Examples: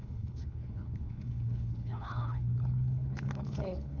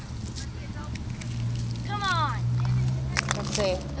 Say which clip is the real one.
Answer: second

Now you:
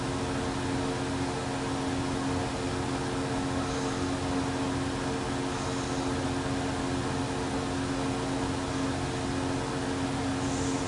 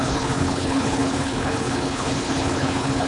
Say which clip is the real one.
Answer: first